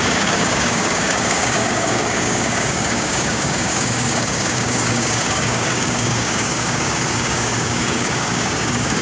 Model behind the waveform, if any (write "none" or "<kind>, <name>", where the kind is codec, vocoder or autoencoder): codec, DAC